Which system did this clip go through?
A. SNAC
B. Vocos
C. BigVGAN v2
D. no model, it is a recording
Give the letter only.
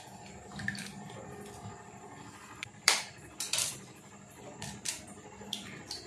C